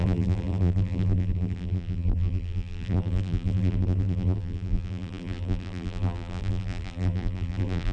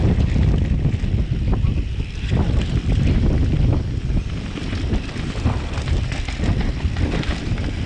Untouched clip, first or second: second